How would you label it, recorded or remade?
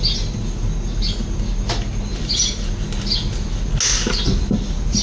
recorded